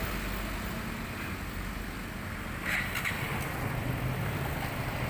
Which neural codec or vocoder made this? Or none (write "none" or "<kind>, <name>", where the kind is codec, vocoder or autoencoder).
none